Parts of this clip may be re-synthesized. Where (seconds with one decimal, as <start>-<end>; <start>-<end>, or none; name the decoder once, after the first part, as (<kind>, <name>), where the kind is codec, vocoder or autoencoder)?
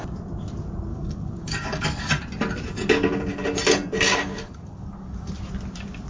0.9-2.1 (codec, DAC); 4.1-5.3